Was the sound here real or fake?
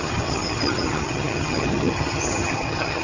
fake